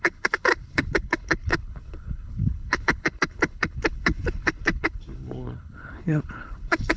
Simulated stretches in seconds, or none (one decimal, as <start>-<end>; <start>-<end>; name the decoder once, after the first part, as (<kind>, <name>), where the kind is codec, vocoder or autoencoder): 0.0-7.0 (codec, HILCodec)